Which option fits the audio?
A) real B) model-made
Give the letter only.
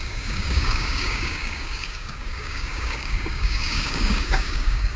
B